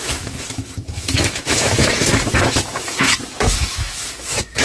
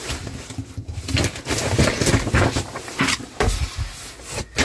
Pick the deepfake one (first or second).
first